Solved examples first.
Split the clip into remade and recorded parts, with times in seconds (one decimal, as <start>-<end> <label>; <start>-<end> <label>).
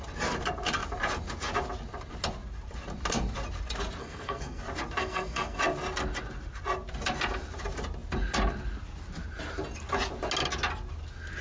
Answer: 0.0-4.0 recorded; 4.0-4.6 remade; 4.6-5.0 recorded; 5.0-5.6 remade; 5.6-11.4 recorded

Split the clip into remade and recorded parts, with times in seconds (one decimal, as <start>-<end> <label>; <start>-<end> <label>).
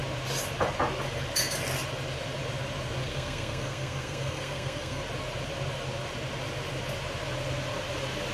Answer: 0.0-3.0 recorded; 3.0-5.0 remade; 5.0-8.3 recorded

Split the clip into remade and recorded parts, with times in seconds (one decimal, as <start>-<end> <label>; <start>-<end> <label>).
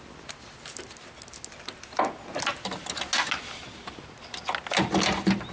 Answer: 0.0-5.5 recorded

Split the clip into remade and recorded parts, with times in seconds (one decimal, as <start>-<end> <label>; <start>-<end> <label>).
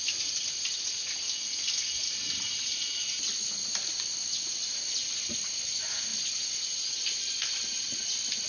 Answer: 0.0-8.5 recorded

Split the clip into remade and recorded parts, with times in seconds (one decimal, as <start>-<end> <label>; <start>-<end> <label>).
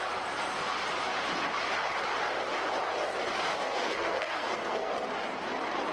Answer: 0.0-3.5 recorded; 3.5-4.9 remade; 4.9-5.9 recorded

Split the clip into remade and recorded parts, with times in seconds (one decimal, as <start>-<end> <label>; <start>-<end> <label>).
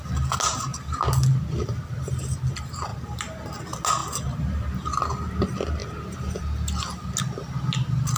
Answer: 0.0-8.2 recorded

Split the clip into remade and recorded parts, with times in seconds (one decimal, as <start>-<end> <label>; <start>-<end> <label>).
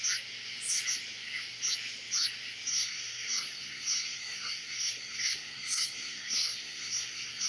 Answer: 0.0-2.7 recorded; 2.7-7.5 remade